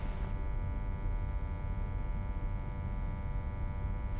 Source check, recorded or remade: recorded